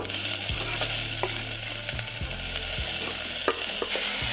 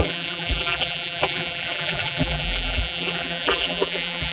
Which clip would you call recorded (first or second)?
first